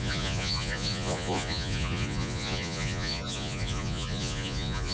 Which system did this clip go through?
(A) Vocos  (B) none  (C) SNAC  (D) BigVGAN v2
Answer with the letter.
A